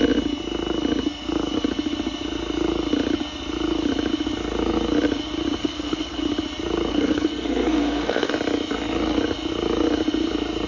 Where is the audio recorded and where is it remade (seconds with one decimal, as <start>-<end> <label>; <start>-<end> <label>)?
0.0-5.6 recorded; 5.6-6.2 remade; 6.2-6.9 recorded; 6.9-8.3 remade; 8.3-10.7 recorded